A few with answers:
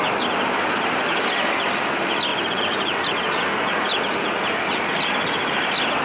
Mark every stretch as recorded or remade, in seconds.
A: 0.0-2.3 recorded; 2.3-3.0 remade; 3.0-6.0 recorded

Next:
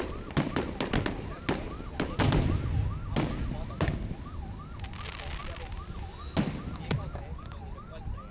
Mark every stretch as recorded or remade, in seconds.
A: 0.0-8.3 recorded